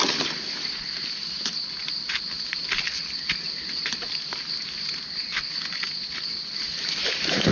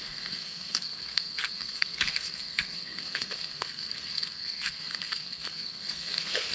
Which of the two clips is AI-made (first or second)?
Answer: second